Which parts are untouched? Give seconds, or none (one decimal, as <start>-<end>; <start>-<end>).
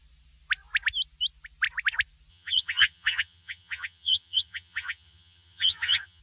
0.0-2.3